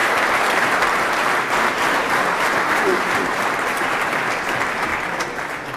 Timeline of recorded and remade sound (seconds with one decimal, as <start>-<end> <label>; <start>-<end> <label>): 0.0-4.9 remade; 4.9-5.8 recorded